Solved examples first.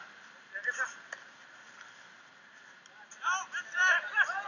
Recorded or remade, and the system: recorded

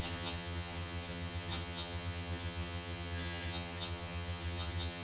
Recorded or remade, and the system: remade, vocoder, HiFi-GAN